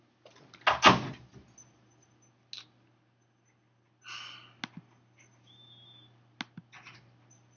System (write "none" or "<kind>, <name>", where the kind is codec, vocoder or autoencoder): none